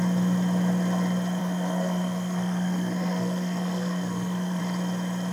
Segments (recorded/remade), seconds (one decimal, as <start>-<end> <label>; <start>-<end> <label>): 0.0-1.4 recorded; 1.4-4.6 remade; 4.6-5.3 recorded